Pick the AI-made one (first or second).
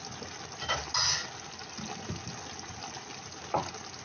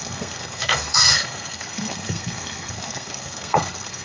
second